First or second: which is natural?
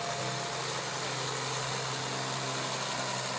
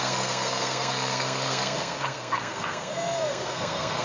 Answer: first